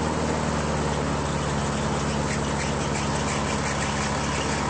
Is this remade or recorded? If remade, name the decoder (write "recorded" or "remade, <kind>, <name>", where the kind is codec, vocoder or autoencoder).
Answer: recorded